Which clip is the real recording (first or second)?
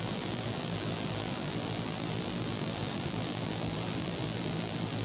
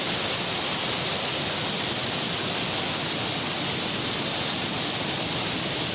second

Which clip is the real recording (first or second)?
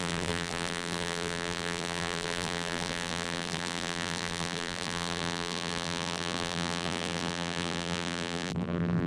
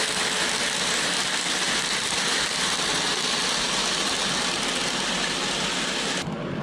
second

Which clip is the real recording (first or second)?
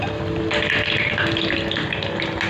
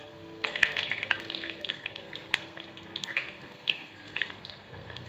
first